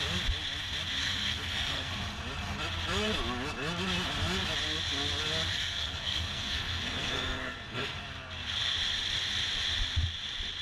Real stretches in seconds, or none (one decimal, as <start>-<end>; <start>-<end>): 0.0-1.0; 1.9-5.5; 8.0-10.6

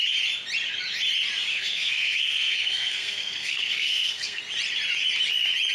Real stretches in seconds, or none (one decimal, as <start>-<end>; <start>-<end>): 0.0-1.5; 4.4-5.7

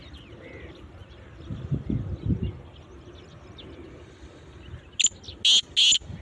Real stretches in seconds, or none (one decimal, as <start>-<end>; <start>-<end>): 0.0-6.2

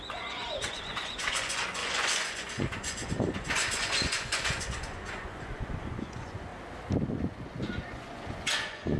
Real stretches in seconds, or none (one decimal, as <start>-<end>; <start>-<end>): 6.5-7.1

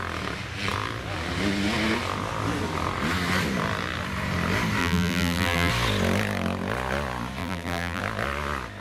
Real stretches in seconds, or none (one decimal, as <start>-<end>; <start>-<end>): 0.0-4.8; 5.7-7.4; 8.0-8.8